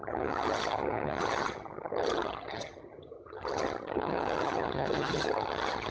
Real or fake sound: fake